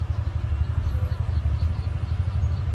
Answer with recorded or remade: recorded